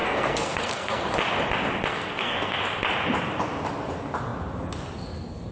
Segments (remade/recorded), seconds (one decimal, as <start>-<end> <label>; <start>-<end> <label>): 0.0-1.1 remade; 1.1-1.9 recorded; 1.9-2.6 remade; 2.6-5.5 recorded